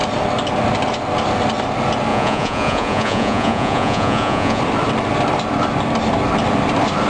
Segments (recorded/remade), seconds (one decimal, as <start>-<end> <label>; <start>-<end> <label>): 0.0-2.1 recorded; 2.1-4.6 remade; 4.6-7.1 recorded